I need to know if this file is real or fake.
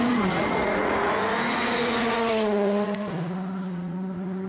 fake